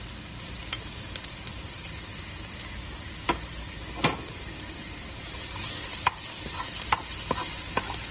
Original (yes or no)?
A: yes